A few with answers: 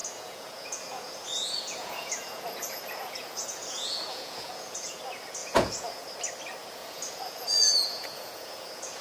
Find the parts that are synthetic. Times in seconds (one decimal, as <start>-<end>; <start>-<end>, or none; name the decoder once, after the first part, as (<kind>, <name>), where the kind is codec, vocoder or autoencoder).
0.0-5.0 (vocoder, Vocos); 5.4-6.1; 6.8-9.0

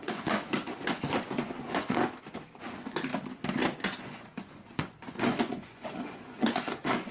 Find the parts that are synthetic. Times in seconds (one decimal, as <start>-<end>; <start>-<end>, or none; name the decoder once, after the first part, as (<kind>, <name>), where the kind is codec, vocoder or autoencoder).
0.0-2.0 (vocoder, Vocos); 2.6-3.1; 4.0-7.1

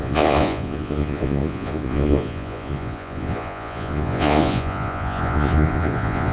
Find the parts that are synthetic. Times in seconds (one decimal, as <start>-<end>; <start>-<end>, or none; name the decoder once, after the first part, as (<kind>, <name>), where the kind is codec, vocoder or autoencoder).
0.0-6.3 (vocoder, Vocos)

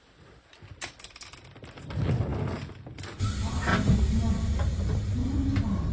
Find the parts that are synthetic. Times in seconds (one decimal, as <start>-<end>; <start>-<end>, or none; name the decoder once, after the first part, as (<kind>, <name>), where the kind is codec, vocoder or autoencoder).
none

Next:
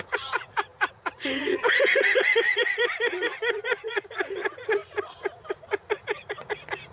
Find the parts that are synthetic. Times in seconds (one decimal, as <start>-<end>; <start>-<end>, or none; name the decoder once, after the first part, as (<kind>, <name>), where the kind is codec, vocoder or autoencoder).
0.0-6.9 (vocoder, Vocos)

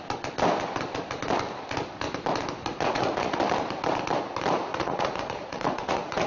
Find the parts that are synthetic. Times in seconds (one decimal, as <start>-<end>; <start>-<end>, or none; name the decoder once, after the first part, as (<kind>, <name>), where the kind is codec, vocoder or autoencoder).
2.7-3.4 (vocoder, Vocos); 4.7-6.3

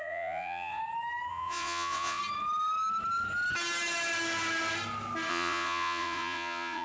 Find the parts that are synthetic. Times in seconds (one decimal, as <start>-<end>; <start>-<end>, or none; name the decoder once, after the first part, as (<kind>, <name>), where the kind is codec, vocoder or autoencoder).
0.0-0.8 (vocoder, Vocos); 1.3-2.2; 5.3-6.8